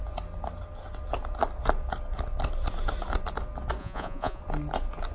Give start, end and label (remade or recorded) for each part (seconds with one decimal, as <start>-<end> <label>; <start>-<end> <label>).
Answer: 0.0-3.8 recorded; 3.8-4.4 remade; 4.4-5.1 recorded